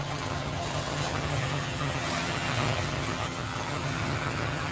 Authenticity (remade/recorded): remade